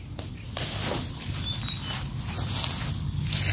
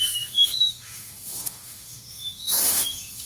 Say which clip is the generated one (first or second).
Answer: second